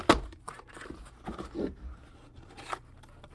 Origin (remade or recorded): recorded